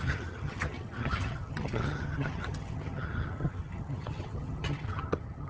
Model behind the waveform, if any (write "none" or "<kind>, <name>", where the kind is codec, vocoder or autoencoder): vocoder, HiFi-GAN